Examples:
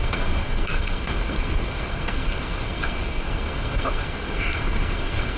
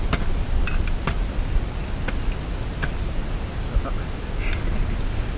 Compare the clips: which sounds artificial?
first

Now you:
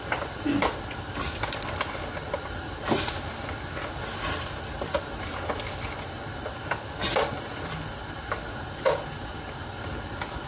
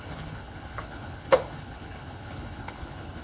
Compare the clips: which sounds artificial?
second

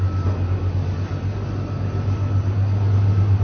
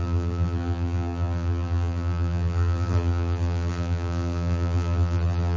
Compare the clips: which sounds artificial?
second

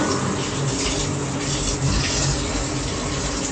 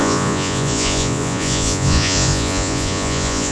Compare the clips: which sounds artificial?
second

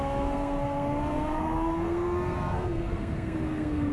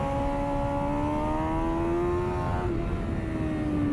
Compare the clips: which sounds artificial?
first